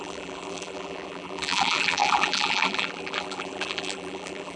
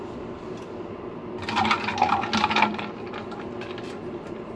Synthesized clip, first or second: first